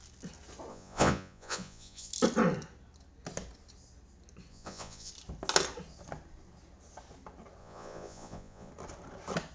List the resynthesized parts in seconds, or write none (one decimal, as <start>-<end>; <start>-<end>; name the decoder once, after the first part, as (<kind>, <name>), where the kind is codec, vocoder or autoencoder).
0.7-2.1 (vocoder, Vocos); 4.5-5.1; 7.6-8.7